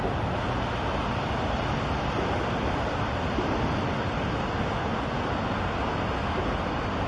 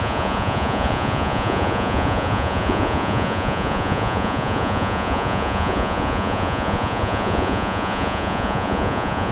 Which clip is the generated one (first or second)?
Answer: second